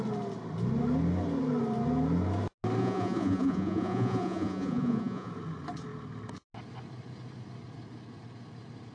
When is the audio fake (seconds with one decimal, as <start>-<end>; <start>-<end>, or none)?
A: 2.8-5.3